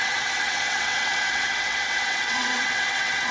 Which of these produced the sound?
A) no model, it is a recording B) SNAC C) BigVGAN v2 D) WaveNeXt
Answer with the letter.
D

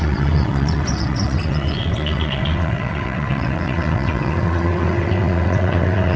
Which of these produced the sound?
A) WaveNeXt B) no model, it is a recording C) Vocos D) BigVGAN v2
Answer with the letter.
A